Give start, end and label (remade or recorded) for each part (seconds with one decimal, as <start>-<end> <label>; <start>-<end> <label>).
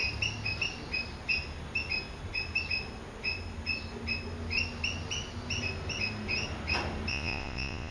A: 0.0-7.1 recorded; 7.1-7.9 remade